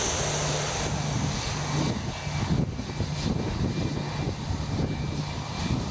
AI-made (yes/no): no